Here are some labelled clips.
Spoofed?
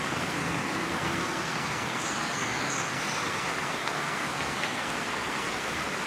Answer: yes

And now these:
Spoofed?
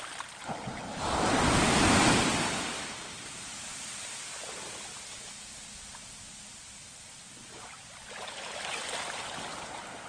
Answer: no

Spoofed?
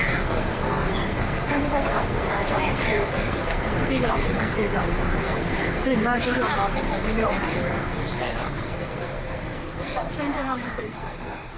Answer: yes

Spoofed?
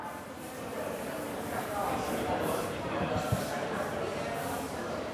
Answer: yes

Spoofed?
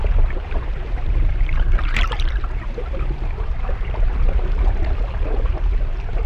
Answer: yes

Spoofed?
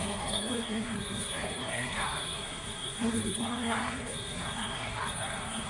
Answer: yes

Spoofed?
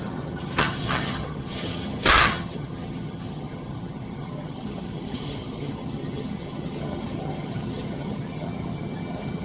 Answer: yes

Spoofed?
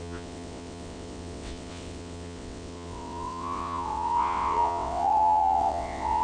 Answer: yes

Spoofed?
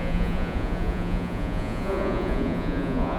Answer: yes